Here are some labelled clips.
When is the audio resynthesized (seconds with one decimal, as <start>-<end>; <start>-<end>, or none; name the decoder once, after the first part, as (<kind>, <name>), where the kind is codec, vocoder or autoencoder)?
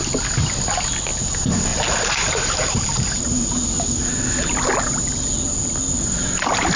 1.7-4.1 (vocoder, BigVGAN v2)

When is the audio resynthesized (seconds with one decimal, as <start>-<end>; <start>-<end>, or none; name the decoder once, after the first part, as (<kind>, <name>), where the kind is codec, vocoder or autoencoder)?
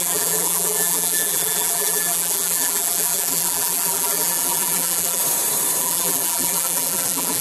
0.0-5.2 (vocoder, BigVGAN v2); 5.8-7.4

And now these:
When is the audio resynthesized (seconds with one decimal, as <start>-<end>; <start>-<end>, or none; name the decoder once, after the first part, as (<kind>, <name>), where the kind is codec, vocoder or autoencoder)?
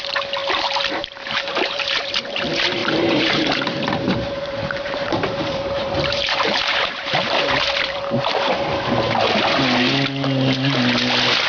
0.4-2.4 (vocoder, BigVGAN v2); 2.8-8.0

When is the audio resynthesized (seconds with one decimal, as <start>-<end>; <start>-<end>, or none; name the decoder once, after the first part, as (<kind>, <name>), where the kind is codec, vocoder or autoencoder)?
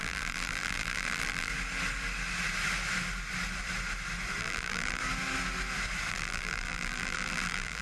0.0-1.5 (vocoder, BigVGAN v2); 4.4-5.0; 6.1-7.8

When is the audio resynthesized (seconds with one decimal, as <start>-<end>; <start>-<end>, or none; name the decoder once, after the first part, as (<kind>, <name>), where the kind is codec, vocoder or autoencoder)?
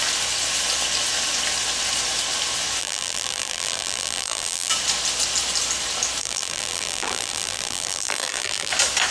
2.8-4.7 (vocoder, BigVGAN v2); 6.2-8.7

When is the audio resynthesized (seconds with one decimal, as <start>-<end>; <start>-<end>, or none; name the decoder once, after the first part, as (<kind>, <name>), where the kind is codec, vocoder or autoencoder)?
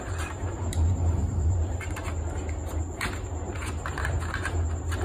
0.0-2.0 (vocoder, BigVGAN v2)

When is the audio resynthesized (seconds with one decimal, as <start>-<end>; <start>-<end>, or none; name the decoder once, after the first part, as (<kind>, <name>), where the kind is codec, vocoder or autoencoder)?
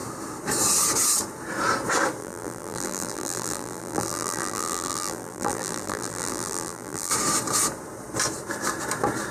2.2-7.1 (vocoder, BigVGAN v2)